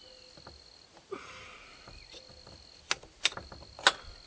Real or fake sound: real